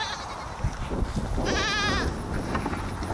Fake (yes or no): no